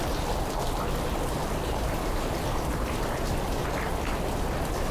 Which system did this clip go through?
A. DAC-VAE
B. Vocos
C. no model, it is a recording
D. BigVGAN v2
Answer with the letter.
C